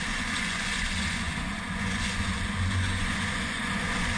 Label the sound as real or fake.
fake